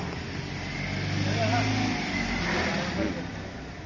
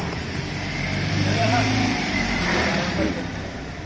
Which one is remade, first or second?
second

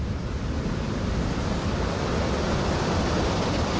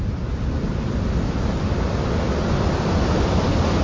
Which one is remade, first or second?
first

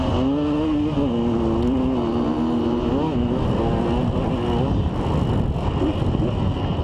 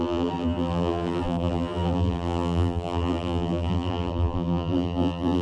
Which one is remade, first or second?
second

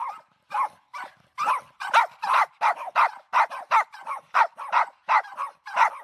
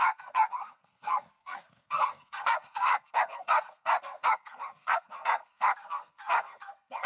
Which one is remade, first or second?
second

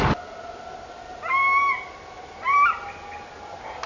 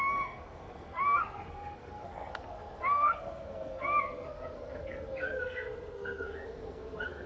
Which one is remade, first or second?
second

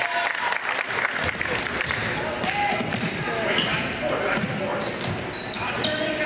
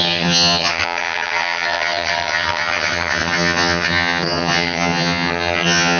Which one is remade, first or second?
second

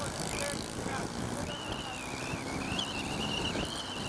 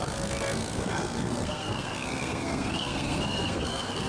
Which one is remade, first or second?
second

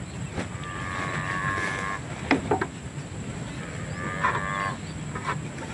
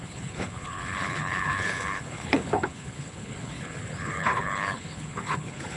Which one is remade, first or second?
second